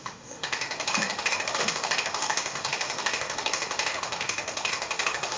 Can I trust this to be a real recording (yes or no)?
no